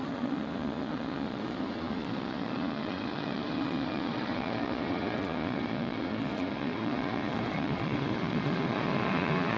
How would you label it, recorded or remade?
remade